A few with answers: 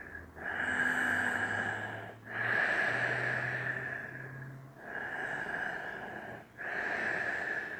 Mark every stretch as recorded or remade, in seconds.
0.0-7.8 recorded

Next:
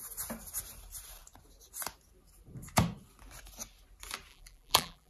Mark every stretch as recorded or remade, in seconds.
0.0-4.3 recorded; 4.3-5.1 remade

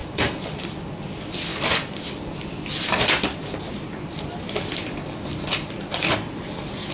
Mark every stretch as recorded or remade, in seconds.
0.0-0.9 remade; 0.9-1.5 recorded; 1.5-2.1 remade; 2.1-6.9 recorded

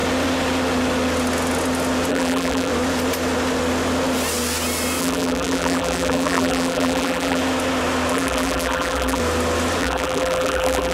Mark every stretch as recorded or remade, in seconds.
0.0-2.1 recorded; 2.1-2.7 remade; 2.7-5.0 recorded; 5.0-7.4 remade; 7.4-8.1 recorded; 8.1-9.2 remade; 9.2-9.8 recorded; 9.8-10.9 remade

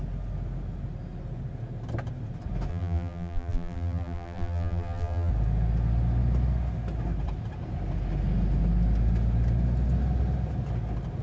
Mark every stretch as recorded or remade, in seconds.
0.0-2.7 recorded; 2.7-5.3 remade; 5.3-11.2 recorded